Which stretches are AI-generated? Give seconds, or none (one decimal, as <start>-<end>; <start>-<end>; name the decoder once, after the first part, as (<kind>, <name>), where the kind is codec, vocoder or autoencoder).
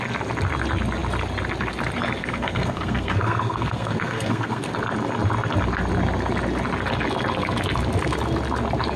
2.2-4.8 (codec, SNAC)